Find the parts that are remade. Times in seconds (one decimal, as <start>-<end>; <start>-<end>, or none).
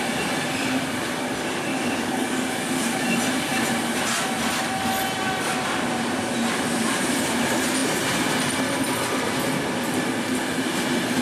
1.7-3.0